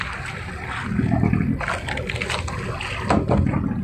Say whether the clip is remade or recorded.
recorded